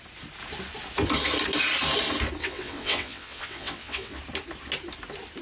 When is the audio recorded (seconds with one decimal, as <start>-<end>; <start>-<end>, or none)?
0.0-2.4; 4.2-5.4